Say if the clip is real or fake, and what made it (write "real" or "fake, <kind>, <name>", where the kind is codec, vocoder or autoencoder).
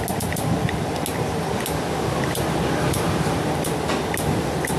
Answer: real